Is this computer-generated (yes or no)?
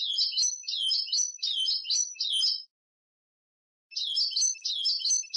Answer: no